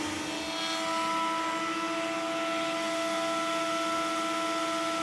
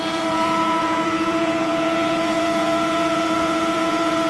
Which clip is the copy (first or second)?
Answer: second